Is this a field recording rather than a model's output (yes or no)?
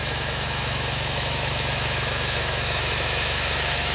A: no